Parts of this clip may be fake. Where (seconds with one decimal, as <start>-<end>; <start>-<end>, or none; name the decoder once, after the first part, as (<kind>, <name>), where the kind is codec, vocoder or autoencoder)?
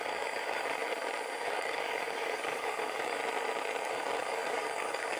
0.0-0.8 (codec, DAC); 1.4-3.2; 3.9-5.2